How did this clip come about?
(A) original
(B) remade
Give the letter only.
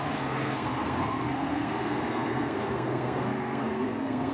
B